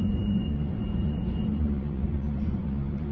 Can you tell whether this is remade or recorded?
remade